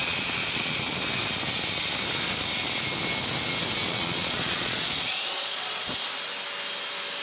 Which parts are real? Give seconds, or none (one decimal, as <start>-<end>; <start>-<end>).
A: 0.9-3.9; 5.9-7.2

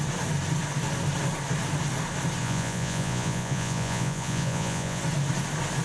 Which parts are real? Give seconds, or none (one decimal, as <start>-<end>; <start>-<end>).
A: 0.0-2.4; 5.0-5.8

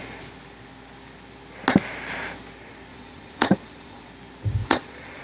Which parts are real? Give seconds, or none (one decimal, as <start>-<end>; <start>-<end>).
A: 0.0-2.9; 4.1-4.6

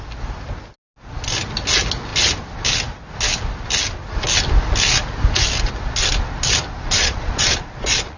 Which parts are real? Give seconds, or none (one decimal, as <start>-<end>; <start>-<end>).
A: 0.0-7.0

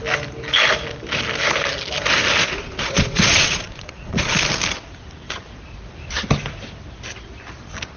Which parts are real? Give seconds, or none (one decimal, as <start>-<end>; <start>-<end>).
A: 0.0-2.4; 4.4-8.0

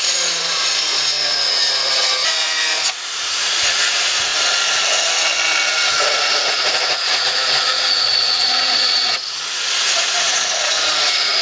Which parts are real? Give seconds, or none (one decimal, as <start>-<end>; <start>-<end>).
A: 4.3-5.9